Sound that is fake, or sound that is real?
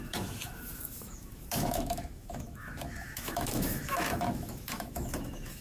fake